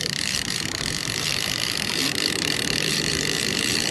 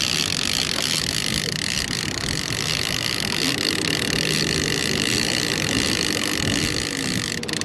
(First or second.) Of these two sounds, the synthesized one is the first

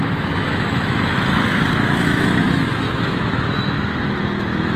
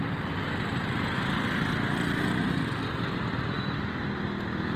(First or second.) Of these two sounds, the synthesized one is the first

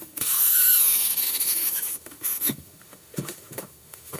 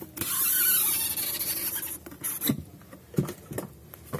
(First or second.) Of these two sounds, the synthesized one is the first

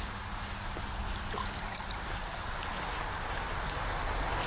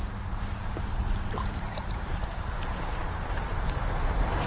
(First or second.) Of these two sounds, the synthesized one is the second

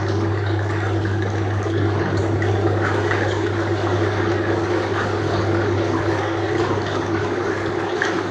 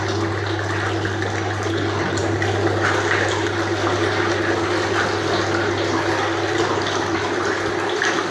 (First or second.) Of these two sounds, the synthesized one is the first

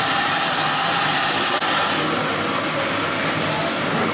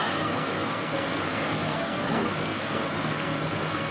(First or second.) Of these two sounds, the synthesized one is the second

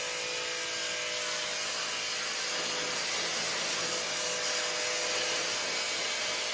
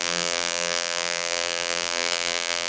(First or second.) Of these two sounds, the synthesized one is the second